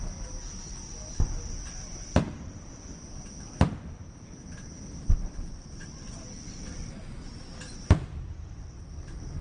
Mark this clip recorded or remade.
recorded